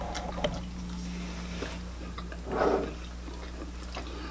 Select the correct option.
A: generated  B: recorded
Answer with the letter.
B